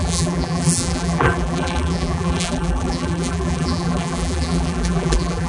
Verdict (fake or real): fake